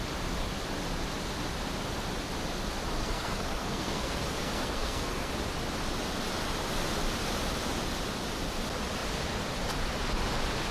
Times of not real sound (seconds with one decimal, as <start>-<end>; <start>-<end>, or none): 3.0-5.3